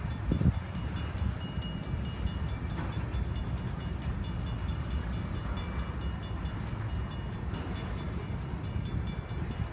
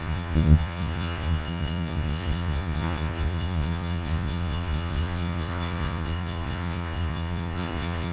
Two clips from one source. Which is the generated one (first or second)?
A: second